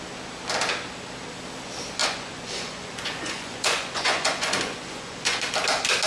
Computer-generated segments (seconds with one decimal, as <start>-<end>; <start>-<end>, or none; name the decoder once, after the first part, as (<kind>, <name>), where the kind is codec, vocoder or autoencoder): 2.0-5.4 (vocoder, Vocos)